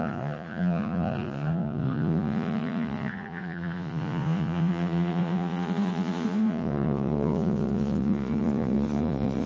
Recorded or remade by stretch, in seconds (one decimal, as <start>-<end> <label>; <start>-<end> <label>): 0.0-9.5 remade